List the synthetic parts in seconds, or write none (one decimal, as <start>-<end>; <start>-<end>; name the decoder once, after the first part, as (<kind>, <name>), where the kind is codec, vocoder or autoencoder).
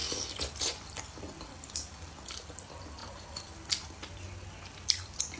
none